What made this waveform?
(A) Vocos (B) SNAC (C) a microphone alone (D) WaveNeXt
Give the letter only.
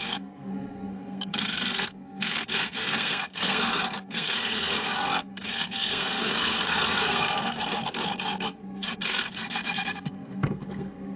B